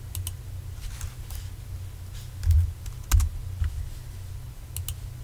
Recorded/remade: recorded